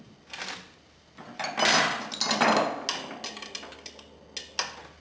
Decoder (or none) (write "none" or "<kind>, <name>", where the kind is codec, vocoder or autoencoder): none